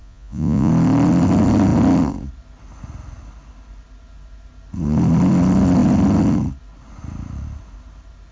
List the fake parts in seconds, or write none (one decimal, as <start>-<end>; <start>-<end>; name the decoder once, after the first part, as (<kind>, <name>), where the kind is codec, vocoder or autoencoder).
0.0-0.7 (vocoder, Vocos)